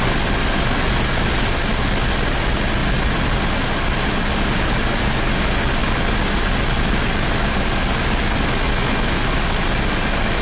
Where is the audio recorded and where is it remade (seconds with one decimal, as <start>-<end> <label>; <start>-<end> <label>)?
0.0-10.4 recorded